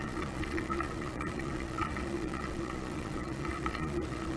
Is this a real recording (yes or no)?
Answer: no